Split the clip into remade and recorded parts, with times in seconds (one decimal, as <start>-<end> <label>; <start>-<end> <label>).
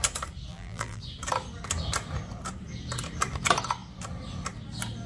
0.0-0.5 recorded; 0.5-1.0 remade; 1.0-5.1 recorded